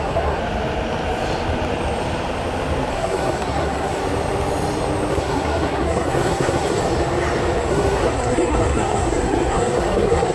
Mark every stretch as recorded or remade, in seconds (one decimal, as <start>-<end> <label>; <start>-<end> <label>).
0.0-0.4 remade; 0.4-2.9 recorded; 2.9-4.0 remade; 4.0-5.1 recorded; 5.1-6.8 remade; 6.8-7.7 recorded; 7.7-10.3 remade